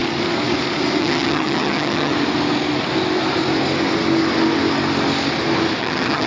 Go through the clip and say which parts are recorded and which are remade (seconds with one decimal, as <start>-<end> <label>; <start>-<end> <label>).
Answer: 0.0-1.0 recorded; 1.0-2.1 remade; 2.1-5.8 recorded; 5.8-6.3 remade